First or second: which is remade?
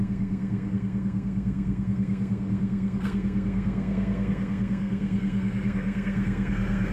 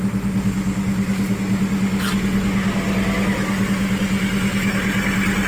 first